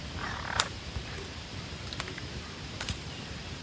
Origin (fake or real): fake